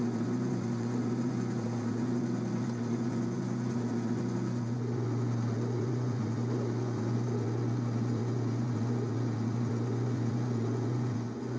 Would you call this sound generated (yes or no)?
yes